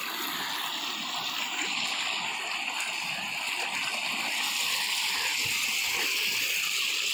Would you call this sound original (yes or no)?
yes